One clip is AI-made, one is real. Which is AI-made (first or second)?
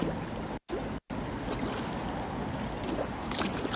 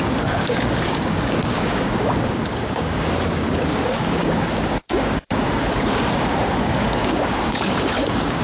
second